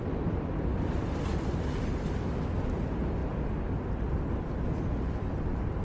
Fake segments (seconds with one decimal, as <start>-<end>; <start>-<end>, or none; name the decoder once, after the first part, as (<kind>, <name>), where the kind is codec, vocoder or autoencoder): none